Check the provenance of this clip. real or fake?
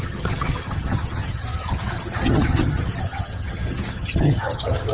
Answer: fake